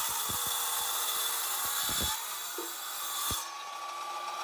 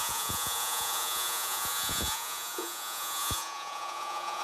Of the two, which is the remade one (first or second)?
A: second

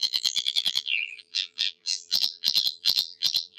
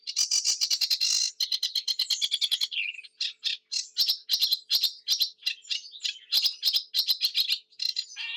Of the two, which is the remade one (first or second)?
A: first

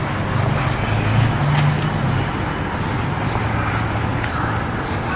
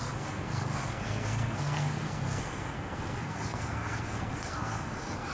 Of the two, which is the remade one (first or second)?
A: second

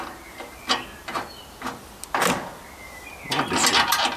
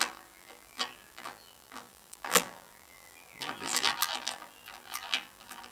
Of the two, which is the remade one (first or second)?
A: second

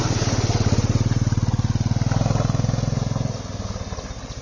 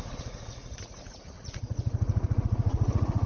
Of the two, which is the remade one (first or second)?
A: second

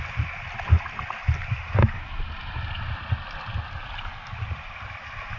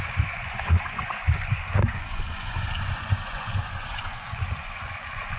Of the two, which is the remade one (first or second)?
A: second